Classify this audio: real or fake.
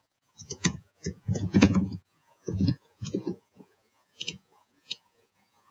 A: fake